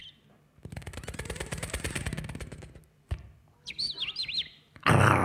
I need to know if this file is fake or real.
real